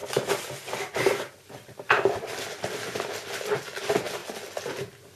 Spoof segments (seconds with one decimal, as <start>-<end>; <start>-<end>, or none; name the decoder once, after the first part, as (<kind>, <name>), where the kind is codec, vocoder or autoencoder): 0.0-3.1 (vocoder, BigVGAN v2)